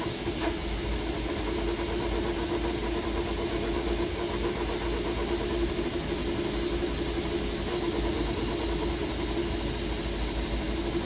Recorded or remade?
recorded